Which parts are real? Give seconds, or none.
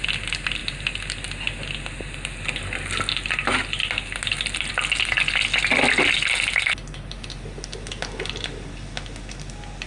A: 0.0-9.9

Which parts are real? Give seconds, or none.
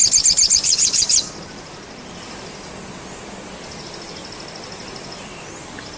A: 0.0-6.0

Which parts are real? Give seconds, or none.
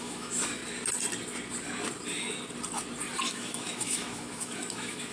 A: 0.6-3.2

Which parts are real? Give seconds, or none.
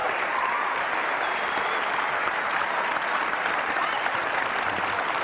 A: 0.0-5.2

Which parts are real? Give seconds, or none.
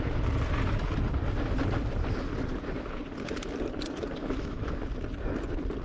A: 0.0-4.2; 4.7-5.8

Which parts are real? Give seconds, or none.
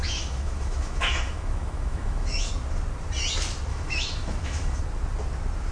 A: 2.5-3.7; 4.8-5.7